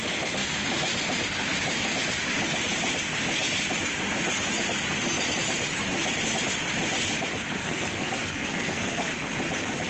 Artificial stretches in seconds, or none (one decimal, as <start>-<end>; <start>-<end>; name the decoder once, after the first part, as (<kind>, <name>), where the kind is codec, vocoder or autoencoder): 7.6-9.1 (codec, SNAC)